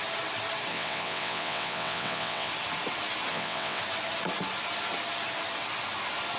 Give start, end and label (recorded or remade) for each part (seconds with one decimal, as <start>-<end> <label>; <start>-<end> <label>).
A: 0.0-0.7 recorded; 0.7-2.5 remade; 2.5-3.3 recorded; 3.3-3.8 remade; 3.8-6.4 recorded